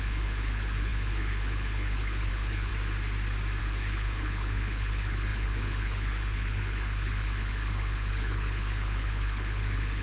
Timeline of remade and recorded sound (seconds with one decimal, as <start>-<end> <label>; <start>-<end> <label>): 0.0-2.7 remade; 2.7-3.6 recorded; 3.6-10.0 remade